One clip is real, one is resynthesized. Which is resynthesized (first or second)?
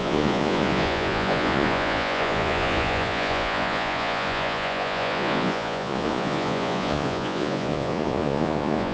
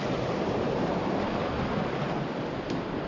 first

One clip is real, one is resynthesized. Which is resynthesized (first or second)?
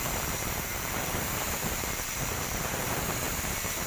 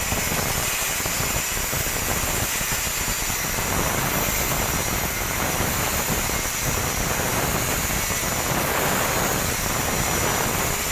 first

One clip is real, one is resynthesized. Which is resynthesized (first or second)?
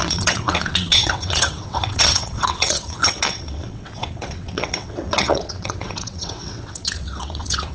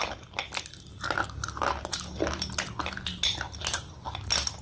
first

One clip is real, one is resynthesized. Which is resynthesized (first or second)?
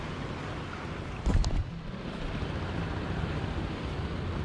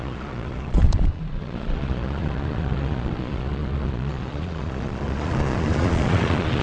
second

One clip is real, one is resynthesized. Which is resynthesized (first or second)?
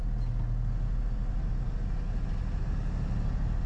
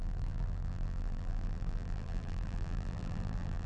second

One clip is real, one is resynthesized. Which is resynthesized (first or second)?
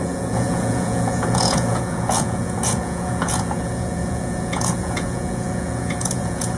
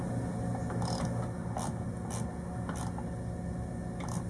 first